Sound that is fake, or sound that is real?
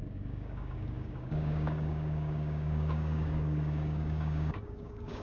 fake